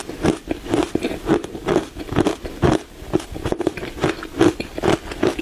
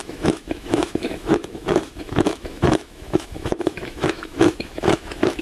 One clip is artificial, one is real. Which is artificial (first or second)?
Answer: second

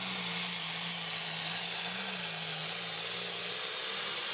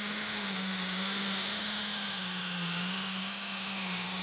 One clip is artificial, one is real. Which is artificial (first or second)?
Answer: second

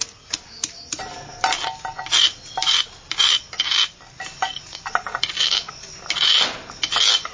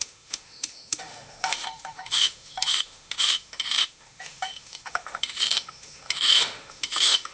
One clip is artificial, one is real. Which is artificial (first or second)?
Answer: second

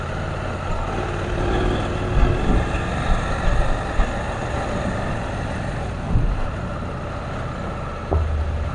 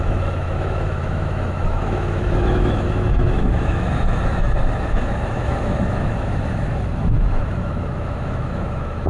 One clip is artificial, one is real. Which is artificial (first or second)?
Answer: second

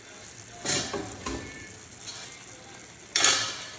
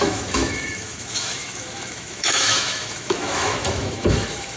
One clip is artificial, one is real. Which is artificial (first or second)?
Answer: second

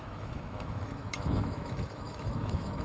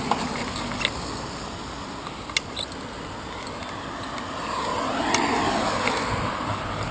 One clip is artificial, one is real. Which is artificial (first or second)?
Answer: first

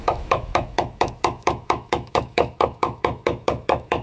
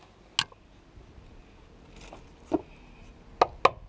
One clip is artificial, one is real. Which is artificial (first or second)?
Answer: first